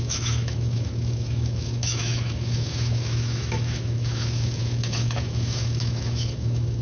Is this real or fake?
fake